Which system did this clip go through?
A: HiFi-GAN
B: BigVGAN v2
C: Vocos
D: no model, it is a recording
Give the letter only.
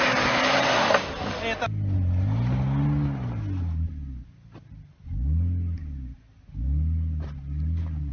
D